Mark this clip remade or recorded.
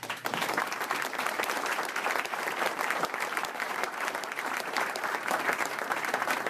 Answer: remade